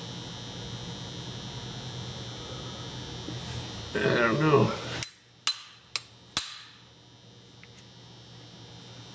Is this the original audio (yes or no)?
yes